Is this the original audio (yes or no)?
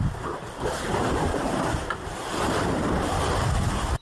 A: yes